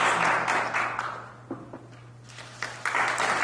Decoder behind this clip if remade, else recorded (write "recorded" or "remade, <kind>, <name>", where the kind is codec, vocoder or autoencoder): recorded